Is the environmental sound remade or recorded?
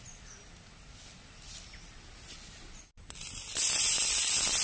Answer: recorded